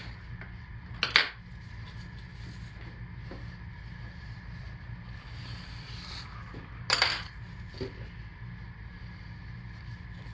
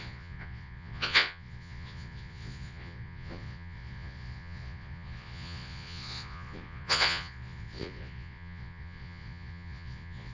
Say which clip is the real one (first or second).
first